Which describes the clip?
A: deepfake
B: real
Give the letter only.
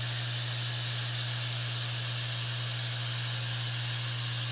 B